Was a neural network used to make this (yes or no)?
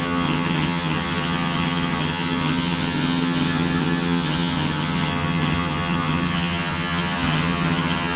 yes